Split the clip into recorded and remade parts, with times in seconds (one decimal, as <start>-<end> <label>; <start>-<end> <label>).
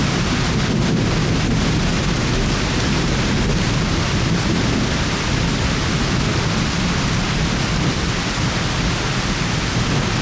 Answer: 0.0-10.2 recorded